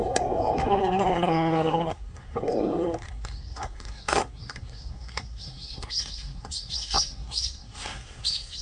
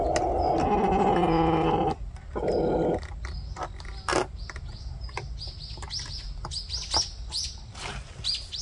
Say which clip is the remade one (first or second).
first